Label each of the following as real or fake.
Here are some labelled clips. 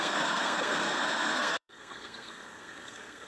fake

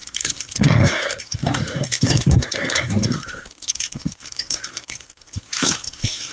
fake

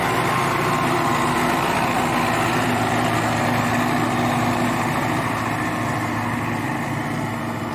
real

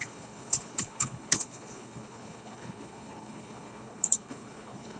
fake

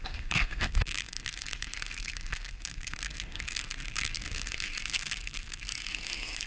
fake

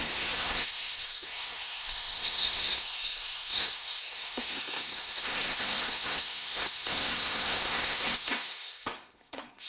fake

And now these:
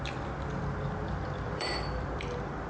fake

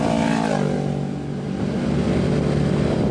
real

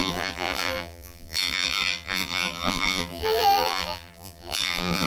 fake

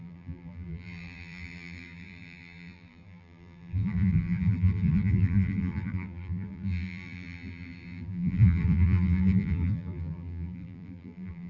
fake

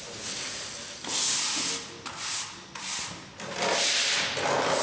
real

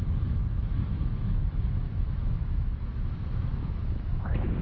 fake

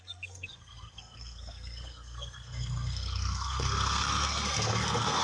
fake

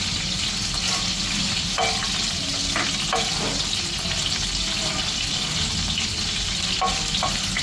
real